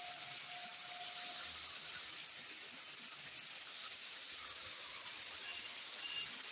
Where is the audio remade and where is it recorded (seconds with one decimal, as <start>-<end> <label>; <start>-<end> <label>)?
0.0-6.5 recorded